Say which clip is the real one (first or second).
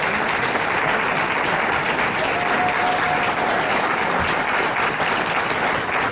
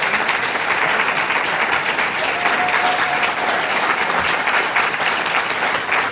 first